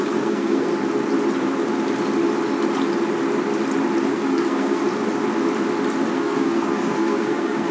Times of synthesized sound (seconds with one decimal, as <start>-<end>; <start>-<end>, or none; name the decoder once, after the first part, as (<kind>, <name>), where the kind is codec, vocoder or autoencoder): 0.0-0.7 (codec, SNAC); 4.1-4.8; 6.1-7.7

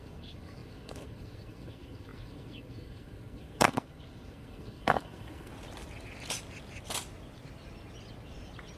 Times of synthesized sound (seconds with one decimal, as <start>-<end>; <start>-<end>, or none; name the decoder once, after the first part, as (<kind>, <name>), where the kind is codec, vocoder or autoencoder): 0.0-5.5 (codec, SNAC)

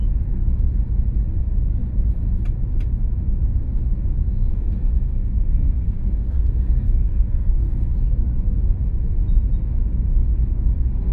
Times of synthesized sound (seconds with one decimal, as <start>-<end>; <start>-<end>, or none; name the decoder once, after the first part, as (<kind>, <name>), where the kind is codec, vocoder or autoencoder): 4.5-7.9 (codec, SNAC)